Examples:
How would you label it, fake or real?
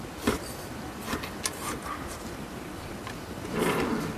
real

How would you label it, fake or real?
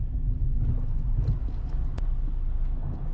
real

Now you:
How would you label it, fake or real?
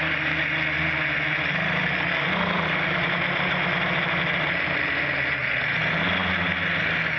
real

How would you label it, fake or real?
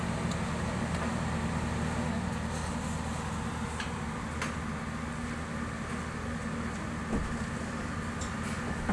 real